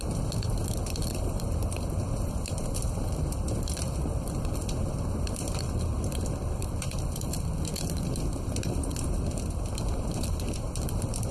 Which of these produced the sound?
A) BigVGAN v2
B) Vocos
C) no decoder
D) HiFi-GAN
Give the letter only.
A